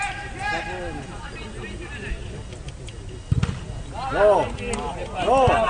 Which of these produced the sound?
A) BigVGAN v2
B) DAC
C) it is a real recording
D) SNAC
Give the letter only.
C